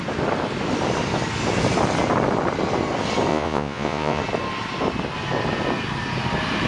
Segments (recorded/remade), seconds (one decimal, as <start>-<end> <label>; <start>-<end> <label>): 0.0-3.3 recorded; 3.3-4.2 remade; 4.2-6.7 recorded